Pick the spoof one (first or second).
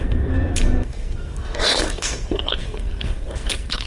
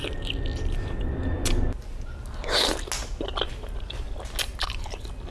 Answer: first